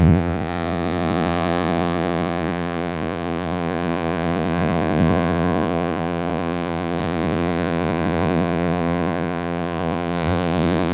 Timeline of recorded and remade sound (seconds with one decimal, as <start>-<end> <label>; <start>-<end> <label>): 0.0-10.9 remade